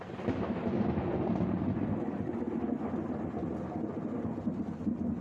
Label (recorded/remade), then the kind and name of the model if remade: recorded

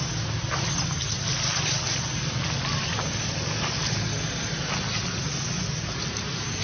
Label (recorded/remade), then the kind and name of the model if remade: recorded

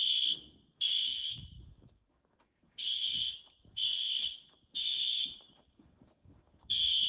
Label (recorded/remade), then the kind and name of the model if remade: remade, codec, DAC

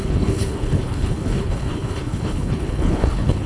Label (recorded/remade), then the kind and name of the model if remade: remade, codec, HILCodec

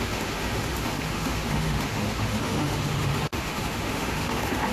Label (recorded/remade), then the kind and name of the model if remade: remade, autoencoder, DAC-VAE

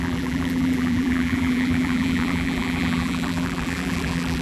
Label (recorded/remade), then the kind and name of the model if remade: remade, vocoder, BigVGAN v2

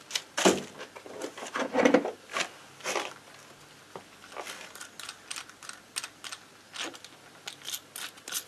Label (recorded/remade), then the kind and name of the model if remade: recorded